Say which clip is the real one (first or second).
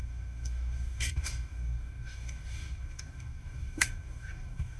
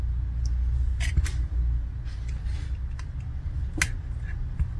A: second